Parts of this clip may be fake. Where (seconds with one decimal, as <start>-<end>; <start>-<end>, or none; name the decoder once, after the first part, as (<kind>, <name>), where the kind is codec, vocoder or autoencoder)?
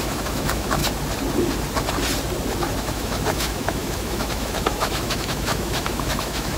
0.0-0.8 (autoencoder, DAC-VAE); 2.8-6.6